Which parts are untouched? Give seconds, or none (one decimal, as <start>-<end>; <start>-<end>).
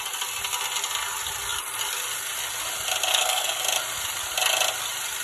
0.0-3.1; 3.6-5.2